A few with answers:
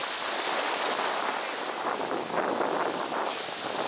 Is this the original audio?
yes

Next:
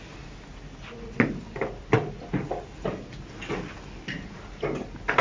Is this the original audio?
yes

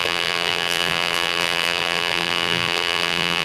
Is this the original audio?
no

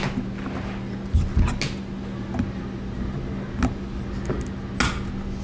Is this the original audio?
yes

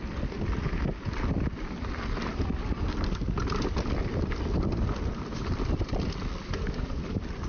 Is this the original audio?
yes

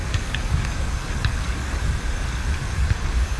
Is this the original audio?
no